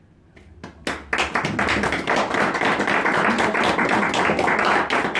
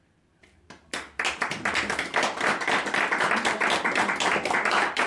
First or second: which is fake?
second